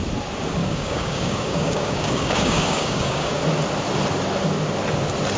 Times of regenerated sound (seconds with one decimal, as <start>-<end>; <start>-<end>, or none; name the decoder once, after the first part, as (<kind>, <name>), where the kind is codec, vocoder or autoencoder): 0.6-3.4 (codec, DAC)